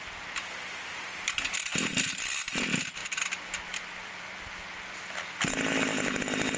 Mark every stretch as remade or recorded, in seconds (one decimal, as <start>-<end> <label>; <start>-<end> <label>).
0.0-6.6 recorded